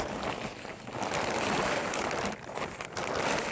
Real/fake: real